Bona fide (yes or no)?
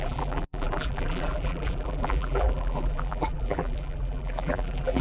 no